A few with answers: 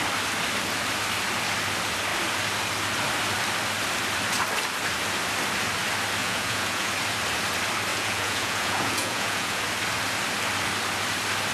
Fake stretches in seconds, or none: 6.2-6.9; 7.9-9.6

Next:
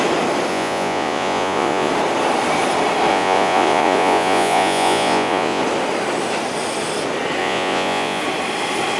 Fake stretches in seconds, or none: 0.5-1.9; 3.1-5.6; 7.4-8.2

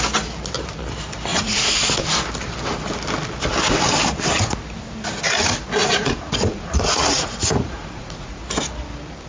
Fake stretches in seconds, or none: 1.3-2.0; 5.8-8.4

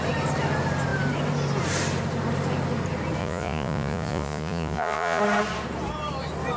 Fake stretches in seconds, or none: 3.2-5.2

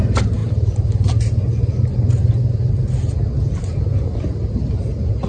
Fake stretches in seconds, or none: none

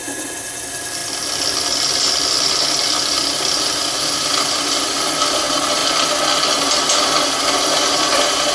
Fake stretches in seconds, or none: none